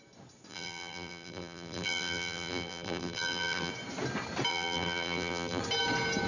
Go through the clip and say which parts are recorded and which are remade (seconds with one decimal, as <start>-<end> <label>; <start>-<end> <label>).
0.0-0.5 recorded; 0.5-3.7 remade; 3.7-4.5 recorded; 4.5-5.6 remade; 5.6-6.3 recorded